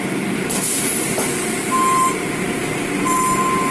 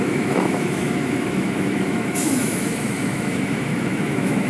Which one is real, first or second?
first